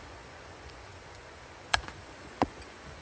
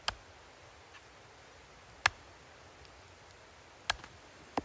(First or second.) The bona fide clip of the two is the second